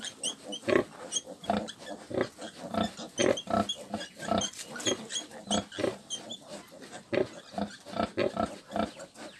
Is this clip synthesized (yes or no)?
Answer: no